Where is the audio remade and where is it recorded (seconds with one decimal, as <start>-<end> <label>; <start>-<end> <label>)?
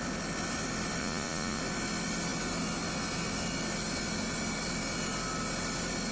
0.0-1.0 recorded; 1.0-1.6 remade; 1.6-6.1 recorded